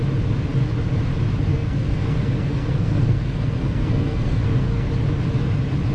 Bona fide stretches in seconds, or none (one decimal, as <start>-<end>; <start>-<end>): 0.0-1.5; 4.9-5.9